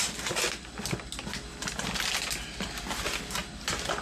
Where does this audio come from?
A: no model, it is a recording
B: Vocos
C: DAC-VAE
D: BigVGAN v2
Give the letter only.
A